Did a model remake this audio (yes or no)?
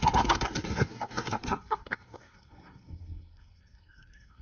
yes